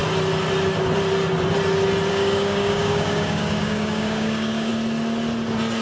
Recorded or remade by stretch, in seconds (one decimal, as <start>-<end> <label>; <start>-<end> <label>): 0.0-2.1 recorded; 2.1-4.7 remade; 4.7-5.8 recorded